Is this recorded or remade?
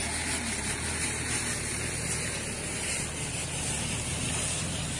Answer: recorded